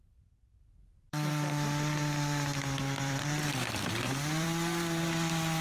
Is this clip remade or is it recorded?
remade